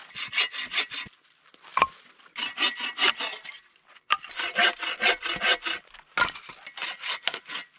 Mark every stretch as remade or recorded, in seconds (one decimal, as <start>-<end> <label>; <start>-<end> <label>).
0.0-0.9 remade; 0.9-7.8 recorded